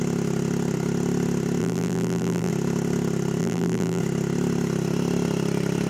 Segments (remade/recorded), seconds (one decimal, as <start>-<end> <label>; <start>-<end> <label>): 0.0-1.6 recorded; 1.6-2.5 remade; 2.5-3.4 recorded; 3.4-4.0 remade; 4.0-5.9 recorded